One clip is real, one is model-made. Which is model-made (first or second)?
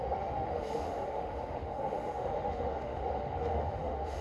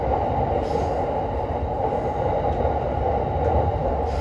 first